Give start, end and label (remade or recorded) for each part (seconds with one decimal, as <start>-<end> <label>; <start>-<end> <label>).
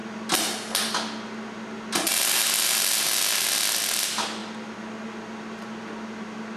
0.0-6.6 recorded